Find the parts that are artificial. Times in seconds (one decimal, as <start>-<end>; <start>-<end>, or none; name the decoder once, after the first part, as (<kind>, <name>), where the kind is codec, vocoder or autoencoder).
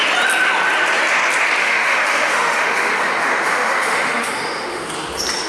1.6-4.9 (autoencoder, DAC-VAE)